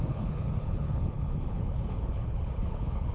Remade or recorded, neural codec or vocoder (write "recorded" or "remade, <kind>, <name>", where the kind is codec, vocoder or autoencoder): remade, codec, HILCodec